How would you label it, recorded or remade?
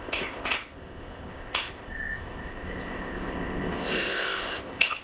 remade